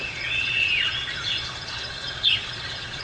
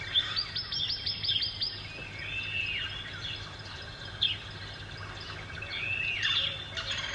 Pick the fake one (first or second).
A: first